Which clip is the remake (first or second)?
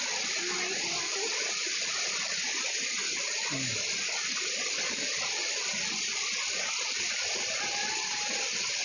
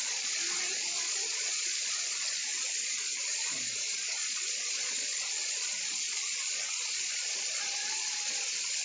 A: second